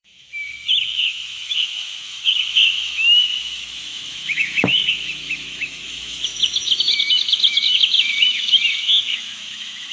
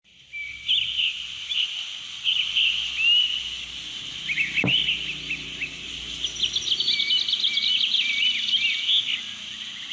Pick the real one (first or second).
second